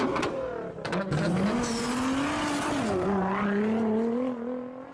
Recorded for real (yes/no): yes